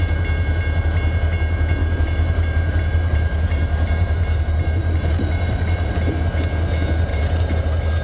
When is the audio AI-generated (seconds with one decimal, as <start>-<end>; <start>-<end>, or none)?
1.8-5.9; 7.1-7.6